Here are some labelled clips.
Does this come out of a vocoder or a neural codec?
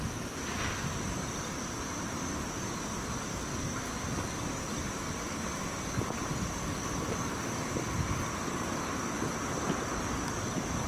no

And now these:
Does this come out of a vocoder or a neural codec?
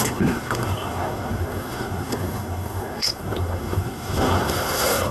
yes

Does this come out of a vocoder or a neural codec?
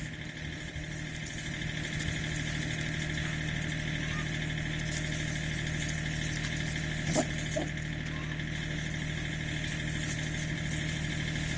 no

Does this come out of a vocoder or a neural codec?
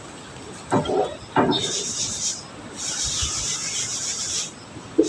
no